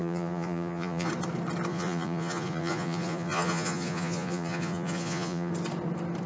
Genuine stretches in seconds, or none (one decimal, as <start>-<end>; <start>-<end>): 1.1-1.7; 5.5-6.3